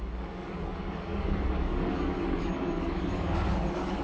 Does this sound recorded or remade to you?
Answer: remade